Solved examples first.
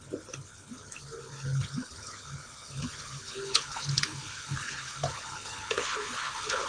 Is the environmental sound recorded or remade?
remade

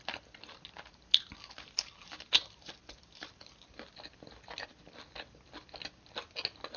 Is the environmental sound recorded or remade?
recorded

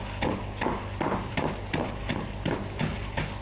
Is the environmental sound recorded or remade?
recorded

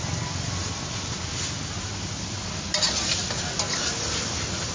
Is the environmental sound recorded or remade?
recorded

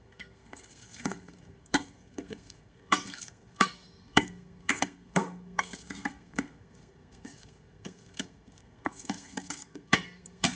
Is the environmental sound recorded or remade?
remade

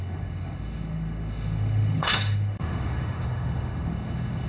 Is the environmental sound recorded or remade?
remade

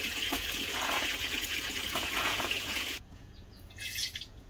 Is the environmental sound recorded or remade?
remade